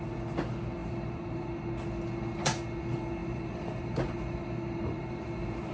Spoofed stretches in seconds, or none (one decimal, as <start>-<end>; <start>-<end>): 0.8-1.5; 3.2-5.7